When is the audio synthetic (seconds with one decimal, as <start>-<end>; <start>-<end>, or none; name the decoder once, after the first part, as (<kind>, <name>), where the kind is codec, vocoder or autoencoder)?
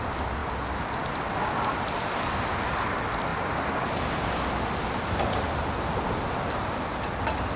none